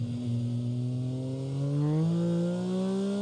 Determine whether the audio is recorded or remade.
recorded